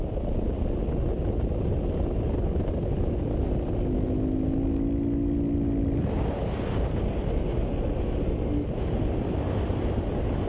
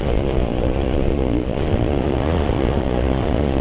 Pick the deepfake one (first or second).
second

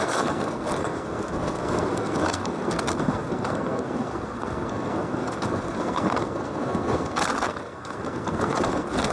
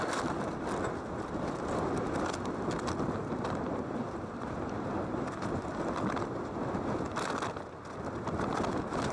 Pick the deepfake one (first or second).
first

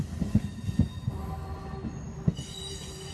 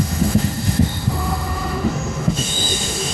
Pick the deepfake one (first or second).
second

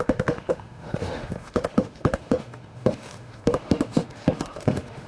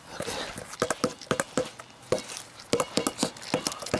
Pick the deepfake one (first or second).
first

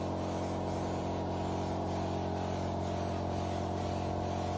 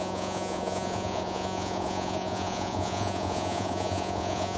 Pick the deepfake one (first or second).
second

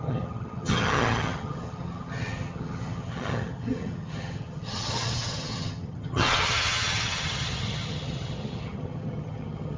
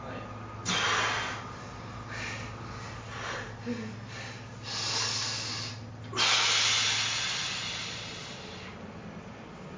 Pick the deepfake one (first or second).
first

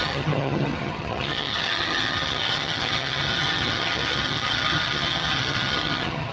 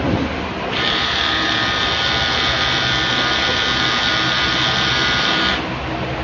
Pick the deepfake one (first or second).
first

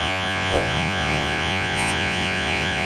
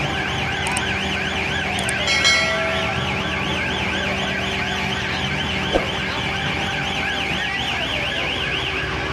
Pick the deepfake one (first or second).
first